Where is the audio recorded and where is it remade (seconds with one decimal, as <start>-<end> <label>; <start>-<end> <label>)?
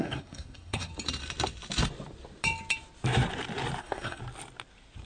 0.0-0.9 remade; 0.9-3.8 recorded; 3.8-4.2 remade; 4.2-5.1 recorded